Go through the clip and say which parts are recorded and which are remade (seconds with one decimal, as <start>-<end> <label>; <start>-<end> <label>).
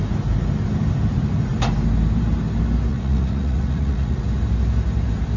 0.0-2.9 recorded; 2.9-4.2 remade; 4.2-5.4 recorded